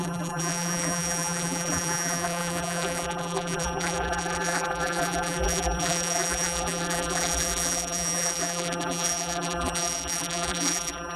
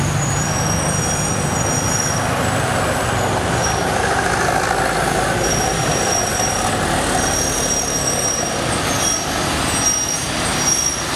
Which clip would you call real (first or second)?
second